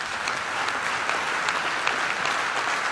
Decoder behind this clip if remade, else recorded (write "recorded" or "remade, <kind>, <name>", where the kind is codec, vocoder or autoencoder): recorded